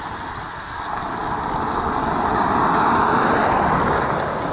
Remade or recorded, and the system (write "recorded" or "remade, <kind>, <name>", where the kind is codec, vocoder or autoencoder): recorded